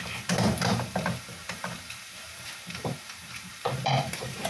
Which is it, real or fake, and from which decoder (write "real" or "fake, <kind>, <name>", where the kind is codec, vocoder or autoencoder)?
fake, vocoder, BigVGAN v2